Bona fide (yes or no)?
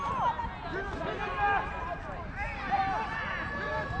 yes